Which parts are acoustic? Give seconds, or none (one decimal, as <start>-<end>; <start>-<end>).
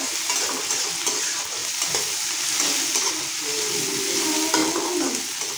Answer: 0.0-5.6